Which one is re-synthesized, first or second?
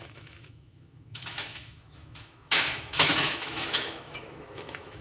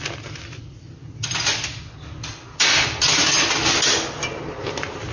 first